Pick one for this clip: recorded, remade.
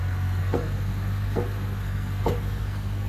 remade